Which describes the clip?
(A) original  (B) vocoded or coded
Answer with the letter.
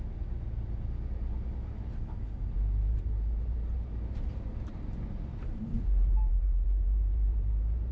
B